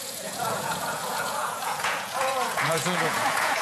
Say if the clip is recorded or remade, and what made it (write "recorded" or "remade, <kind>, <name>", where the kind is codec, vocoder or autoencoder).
remade, vocoder, Vocos